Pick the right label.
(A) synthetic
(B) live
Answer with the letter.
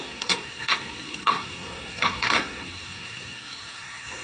A